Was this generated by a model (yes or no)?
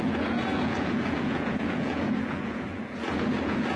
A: yes